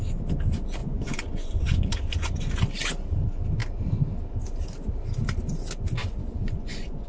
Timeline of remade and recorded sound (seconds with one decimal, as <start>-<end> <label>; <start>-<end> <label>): 0.0-0.8 recorded; 0.8-2.4 remade; 2.4-6.0 recorded; 6.0-7.1 remade

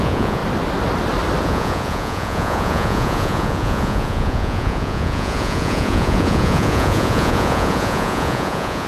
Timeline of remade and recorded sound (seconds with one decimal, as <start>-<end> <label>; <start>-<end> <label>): 0.0-0.4 remade; 0.4-1.4 recorded; 1.4-8.9 remade

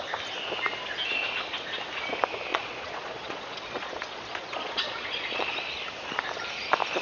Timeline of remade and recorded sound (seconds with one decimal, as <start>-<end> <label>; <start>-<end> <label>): 0.0-2.5 recorded; 2.5-5.5 remade; 5.5-7.0 recorded

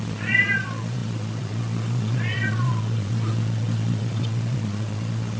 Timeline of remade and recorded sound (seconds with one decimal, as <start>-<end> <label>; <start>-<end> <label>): 0.0-5.4 remade

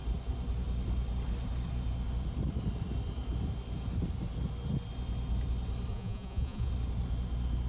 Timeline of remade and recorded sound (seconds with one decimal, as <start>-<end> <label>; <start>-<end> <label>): 0.0-5.9 recorded; 5.9-6.7 remade; 6.7-7.7 recorded

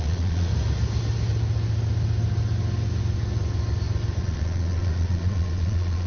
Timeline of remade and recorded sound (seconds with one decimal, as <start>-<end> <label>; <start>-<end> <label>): 0.0-0.5 remade; 0.5-4.2 recorded; 4.2-6.1 remade

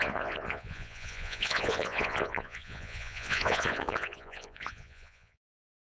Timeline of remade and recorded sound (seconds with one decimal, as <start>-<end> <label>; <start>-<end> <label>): 0.0-6.0 remade

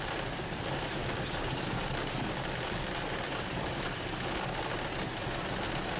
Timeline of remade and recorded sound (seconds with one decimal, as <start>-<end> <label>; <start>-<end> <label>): 0.0-6.0 recorded